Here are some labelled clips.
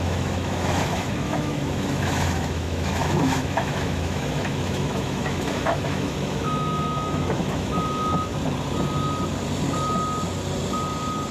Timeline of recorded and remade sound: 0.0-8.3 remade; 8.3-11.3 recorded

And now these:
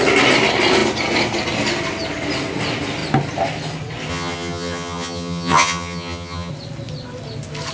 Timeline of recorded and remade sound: 0.0-4.1 recorded; 4.1-6.5 remade; 6.5-7.7 recorded

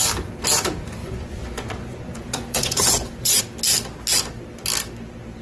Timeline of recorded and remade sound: 0.0-1.0 recorded; 1.0-3.4 remade; 3.4-5.4 recorded

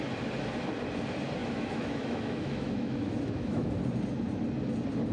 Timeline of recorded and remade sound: 0.0-1.4 recorded; 1.4-3.7 remade; 3.7-5.1 recorded